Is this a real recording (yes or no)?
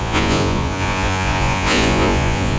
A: no